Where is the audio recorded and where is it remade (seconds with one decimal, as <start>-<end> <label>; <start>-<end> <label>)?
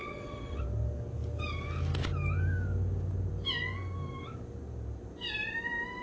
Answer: 0.0-0.6 remade; 0.6-6.0 recorded